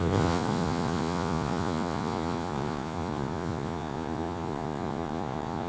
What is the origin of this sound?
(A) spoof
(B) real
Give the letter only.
A